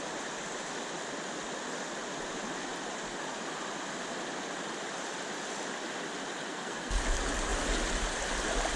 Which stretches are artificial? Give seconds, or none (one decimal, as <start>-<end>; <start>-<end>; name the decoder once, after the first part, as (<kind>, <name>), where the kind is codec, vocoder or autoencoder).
6.5-7.0 (codec, SNAC)